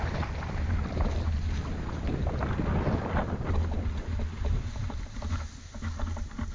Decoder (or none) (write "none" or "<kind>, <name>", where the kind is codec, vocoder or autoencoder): none